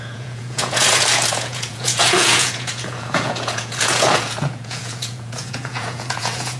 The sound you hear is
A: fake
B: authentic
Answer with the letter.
A